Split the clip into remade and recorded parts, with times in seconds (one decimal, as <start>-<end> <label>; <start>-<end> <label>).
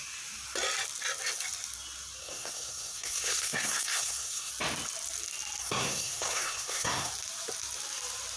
0.0-2.2 recorded; 2.2-4.5 remade; 4.5-5.6 recorded; 5.6-7.1 remade; 7.1-8.4 recorded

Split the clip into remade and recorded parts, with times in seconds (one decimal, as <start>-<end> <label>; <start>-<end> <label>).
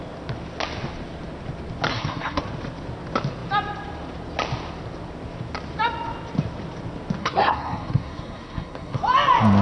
0.0-1.9 recorded; 1.9-2.4 remade; 2.4-7.2 recorded; 7.2-9.0 remade; 9.0-9.6 recorded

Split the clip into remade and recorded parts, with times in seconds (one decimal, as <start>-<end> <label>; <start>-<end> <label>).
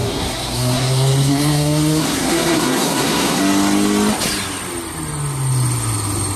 0.0-3.4 remade; 3.4-6.4 recorded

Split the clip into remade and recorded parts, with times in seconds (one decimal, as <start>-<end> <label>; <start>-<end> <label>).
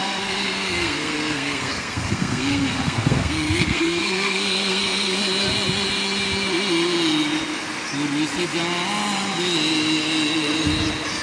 0.0-5.2 remade; 5.2-11.2 recorded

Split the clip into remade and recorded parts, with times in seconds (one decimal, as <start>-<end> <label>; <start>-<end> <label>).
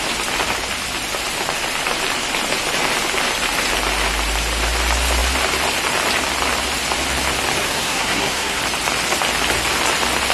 0.0-7.6 recorded; 7.6-8.6 remade; 8.6-10.3 recorded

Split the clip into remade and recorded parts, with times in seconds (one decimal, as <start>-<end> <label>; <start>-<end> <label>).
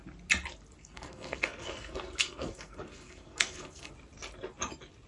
0.0-0.8 recorded; 0.8-3.9 remade; 3.9-5.1 recorded